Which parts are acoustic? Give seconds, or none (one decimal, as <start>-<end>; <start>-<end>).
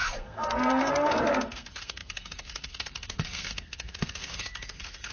none